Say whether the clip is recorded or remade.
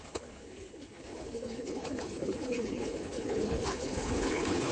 remade